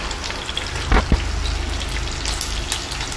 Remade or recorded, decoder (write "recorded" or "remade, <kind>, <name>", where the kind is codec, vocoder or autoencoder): recorded